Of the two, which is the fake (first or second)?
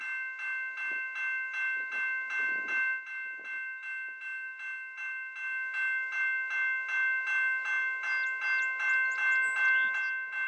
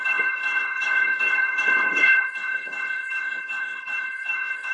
second